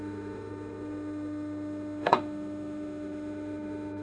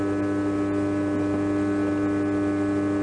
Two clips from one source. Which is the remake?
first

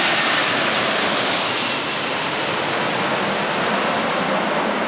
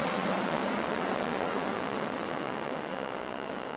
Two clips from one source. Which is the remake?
second